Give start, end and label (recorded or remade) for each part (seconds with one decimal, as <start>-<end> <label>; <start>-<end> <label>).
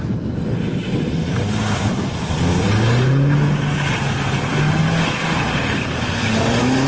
0.0-0.7 recorded; 0.7-2.7 remade; 2.7-6.9 recorded